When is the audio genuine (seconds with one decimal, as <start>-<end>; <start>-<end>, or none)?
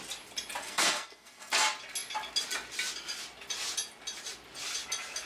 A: 0.0-0.6; 1.5-5.3